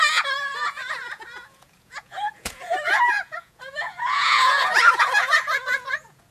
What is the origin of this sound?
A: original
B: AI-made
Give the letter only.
B